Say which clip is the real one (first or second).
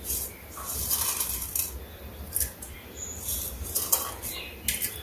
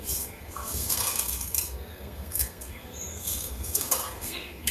first